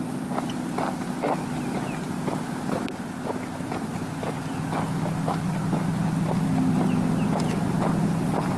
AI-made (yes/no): no